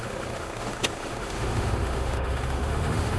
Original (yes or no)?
no